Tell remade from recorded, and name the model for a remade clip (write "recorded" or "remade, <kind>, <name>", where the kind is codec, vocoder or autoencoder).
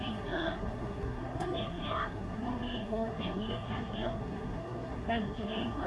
remade, codec, SNAC